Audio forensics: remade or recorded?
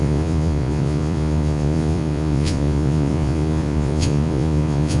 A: remade